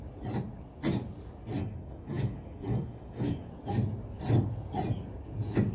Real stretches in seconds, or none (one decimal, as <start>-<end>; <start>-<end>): 0.0-1.6; 3.5-5.7